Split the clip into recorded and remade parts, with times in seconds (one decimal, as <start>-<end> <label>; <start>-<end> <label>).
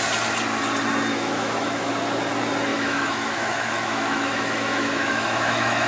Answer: 0.0-1.1 recorded; 1.1-1.9 remade; 1.9-2.7 recorded; 2.7-5.9 remade